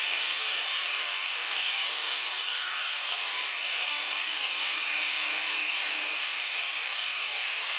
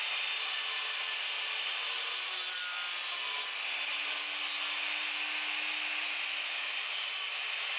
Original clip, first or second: second